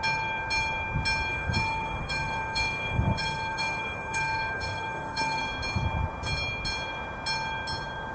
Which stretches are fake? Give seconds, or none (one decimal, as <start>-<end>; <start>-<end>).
1.3-5.4